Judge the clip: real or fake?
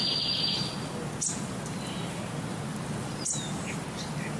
real